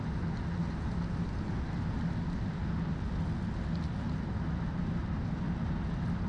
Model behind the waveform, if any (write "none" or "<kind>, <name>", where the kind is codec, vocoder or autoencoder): none